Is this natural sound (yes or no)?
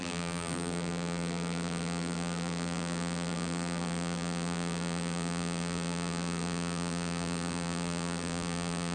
no